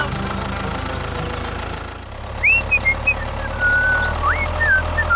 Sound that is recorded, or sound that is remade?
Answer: recorded